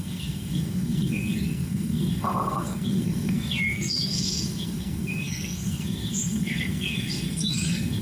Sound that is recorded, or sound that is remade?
remade